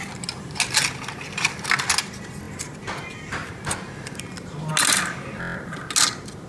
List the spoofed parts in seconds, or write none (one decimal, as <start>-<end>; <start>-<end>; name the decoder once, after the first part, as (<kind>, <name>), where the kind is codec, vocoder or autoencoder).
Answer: none